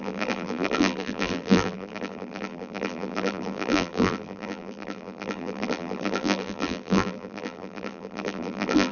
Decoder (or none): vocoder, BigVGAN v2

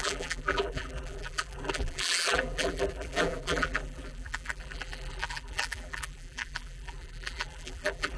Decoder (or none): vocoder, BigVGAN v2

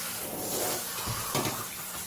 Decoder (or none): vocoder, BigVGAN v2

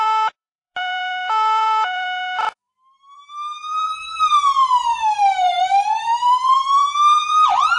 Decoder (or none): vocoder, BigVGAN v2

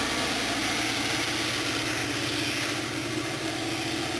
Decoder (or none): none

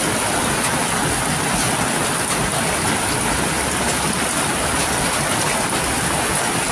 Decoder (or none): none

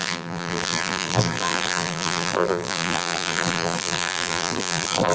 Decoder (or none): vocoder, BigVGAN v2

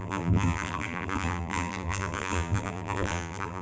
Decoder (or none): vocoder, BigVGAN v2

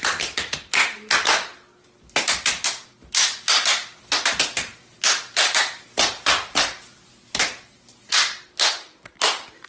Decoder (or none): none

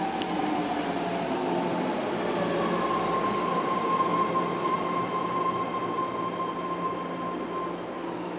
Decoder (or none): none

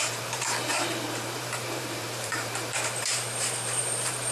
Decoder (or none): vocoder, BigVGAN v2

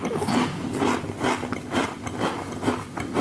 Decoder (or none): none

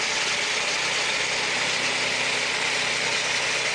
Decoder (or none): none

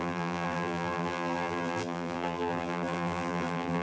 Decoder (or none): vocoder, BigVGAN v2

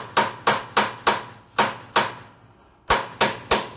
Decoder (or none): none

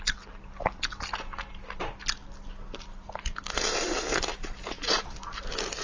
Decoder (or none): none